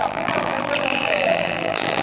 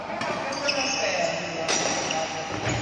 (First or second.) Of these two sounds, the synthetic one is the first